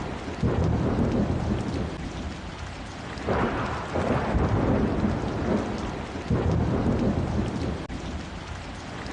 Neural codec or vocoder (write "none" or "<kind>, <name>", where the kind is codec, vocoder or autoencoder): none